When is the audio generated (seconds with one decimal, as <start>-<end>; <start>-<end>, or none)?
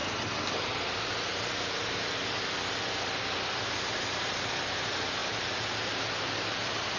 none